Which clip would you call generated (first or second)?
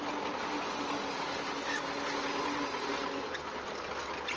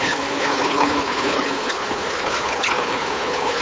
second